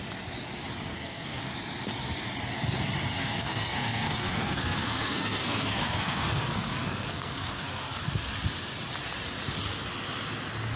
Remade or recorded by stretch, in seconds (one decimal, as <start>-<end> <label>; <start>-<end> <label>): 0.0-0.9 recorded; 0.9-1.4 remade; 1.4-3.1 recorded; 3.1-8.0 remade; 8.0-10.8 recorded